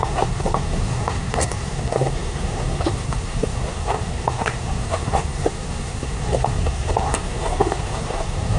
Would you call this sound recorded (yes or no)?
no